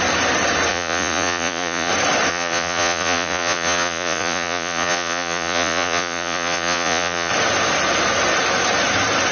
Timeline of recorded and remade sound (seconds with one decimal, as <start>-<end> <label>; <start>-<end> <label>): 0.0-0.7 recorded; 0.7-1.9 remade; 1.9-2.3 recorded; 2.3-7.3 remade; 7.3-9.3 recorded